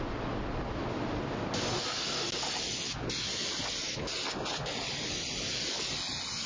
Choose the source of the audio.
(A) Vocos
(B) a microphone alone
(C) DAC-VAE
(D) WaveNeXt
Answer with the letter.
B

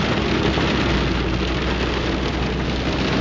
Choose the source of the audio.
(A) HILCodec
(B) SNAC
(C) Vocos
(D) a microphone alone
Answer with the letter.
D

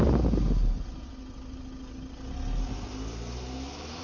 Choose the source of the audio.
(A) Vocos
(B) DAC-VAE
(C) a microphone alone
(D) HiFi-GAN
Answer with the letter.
C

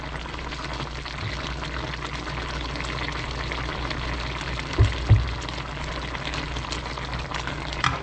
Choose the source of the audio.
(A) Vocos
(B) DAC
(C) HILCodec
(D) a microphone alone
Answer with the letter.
D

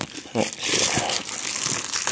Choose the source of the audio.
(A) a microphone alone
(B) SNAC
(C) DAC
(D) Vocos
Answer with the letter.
A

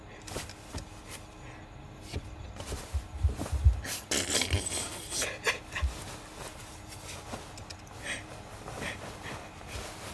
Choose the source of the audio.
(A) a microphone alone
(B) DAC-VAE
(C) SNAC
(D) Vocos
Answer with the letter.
A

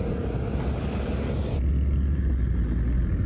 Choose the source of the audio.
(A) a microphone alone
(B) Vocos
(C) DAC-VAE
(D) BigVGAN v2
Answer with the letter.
A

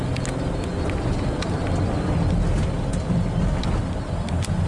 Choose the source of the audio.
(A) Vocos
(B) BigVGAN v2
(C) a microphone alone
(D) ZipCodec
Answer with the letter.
C